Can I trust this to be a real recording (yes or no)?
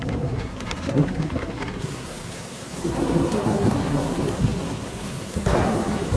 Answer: no